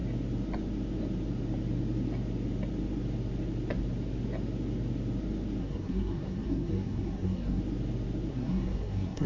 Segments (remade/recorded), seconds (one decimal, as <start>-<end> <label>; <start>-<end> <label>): 0.0-5.6 recorded; 5.6-7.6 remade; 7.6-8.3 recorded; 8.3-9.3 remade